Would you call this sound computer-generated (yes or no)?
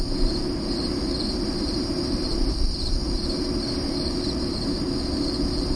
yes